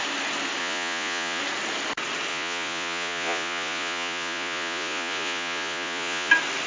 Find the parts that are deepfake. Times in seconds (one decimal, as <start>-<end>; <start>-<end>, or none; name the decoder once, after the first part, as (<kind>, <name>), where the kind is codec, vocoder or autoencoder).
0.6-1.4 (vocoder, Vocos); 2.3-6.3